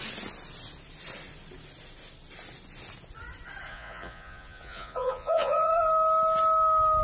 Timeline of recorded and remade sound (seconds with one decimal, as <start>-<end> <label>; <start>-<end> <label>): 0.0-3.7 recorded; 3.7-5.7 remade; 5.7-7.0 recorded